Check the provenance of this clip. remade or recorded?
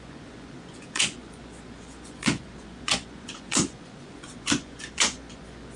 remade